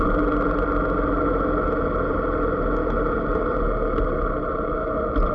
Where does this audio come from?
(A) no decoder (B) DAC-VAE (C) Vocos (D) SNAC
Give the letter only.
A